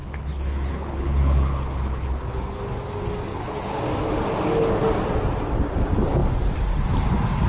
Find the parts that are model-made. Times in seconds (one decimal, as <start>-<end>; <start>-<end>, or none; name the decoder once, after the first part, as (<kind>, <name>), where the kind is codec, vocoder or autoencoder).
0.0-2.6 (codec, HILCodec); 3.3-3.8